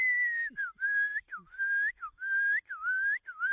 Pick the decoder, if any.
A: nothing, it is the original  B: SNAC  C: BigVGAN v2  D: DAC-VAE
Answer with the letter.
A